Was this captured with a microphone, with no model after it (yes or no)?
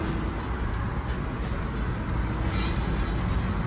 yes